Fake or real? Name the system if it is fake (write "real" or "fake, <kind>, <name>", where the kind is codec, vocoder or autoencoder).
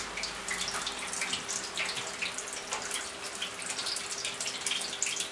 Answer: real